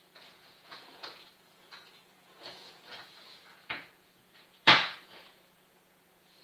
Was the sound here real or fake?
fake